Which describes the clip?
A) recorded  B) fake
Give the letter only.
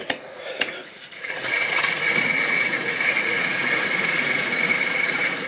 B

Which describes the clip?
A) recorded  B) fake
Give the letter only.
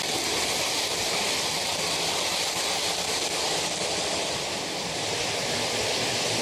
A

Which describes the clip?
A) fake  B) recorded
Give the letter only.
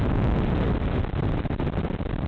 B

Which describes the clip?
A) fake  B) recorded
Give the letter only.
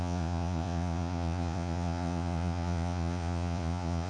A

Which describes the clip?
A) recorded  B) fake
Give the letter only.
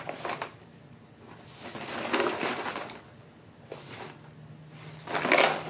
A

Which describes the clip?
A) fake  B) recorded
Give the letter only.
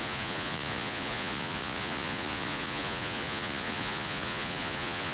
A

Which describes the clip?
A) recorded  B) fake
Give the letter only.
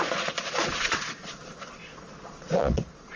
B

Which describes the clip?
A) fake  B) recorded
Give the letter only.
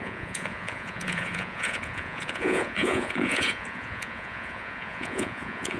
A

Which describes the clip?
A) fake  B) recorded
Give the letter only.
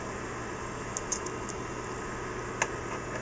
B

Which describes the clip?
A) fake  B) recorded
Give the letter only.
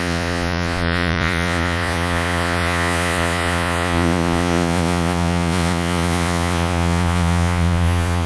A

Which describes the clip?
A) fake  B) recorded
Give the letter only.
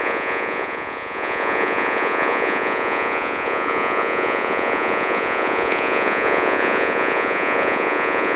A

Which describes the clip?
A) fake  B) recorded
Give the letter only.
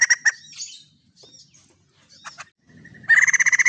B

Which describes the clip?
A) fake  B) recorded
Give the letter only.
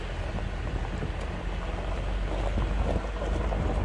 B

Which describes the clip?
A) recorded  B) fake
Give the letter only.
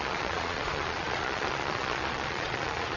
B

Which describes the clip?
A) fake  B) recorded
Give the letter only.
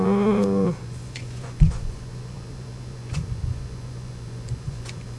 A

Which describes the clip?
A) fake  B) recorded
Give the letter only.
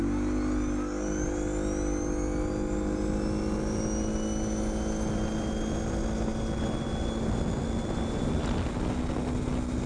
B